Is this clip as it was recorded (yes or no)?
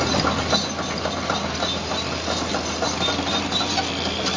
yes